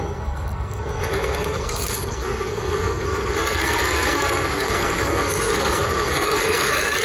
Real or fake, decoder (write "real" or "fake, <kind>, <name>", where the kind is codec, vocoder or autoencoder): fake, codec, SNAC